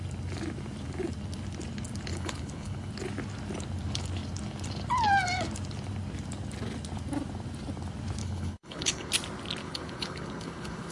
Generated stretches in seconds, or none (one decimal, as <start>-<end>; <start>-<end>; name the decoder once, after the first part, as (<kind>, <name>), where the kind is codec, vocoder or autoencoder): 2.1-2.9 (codec, HILCodec); 8.2-9.1; 9.6-10.9